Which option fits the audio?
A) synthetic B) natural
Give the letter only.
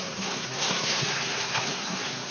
A